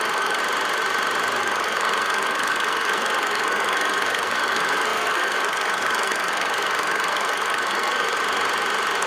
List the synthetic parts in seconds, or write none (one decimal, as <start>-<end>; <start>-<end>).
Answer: 0.0-0.4; 1.4-8.2